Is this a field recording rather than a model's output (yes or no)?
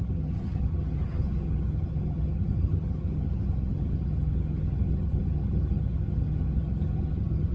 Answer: no